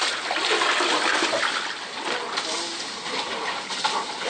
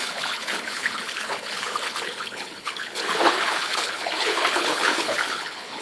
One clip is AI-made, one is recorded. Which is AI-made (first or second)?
second